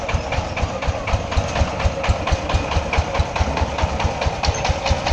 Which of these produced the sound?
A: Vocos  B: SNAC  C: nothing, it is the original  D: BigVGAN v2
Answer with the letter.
C